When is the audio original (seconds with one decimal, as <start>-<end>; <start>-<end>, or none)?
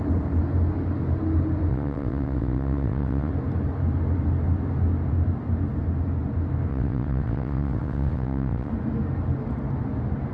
0.0-1.7; 3.3-6.7; 8.7-10.3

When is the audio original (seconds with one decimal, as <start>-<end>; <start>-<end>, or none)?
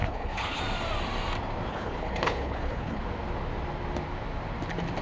0.6-1.7; 3.0-5.0